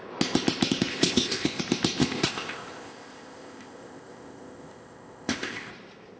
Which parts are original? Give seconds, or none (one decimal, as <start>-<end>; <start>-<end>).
0.0-0.9; 1.6-2.0; 5.7-6.2